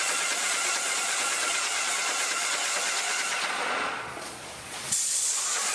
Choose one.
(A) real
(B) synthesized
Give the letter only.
B